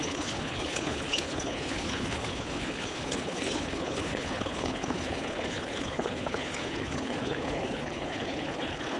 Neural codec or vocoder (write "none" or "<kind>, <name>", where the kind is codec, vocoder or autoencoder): codec, HILCodec